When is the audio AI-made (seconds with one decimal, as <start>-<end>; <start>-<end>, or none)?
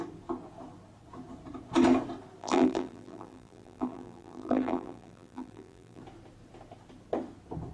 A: 2.4-6.0